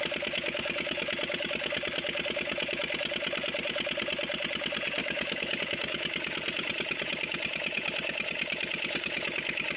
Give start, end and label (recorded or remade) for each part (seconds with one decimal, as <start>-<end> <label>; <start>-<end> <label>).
0.0-5.0 recorded; 5.0-5.6 remade; 5.6-9.8 recorded